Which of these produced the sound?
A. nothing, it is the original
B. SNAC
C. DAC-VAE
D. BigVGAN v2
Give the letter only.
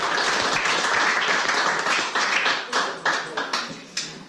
A